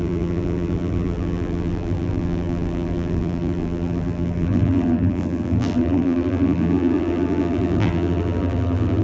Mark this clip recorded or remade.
remade